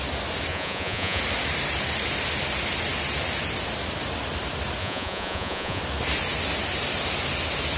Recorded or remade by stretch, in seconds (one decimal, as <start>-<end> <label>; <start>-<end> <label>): 0.0-0.5 recorded; 0.5-1.2 remade; 1.2-4.8 recorded; 4.8-5.8 remade; 5.8-7.8 recorded